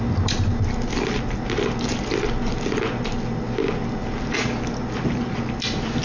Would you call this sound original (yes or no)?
yes